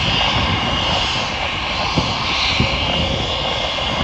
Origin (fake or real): real